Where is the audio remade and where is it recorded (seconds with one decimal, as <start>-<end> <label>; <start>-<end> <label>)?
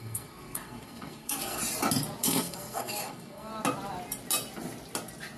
0.0-1.6 remade; 1.6-2.2 recorded; 2.2-3.5 remade; 3.5-5.4 recorded